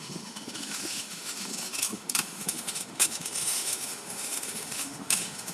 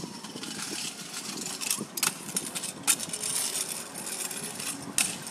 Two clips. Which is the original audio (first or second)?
second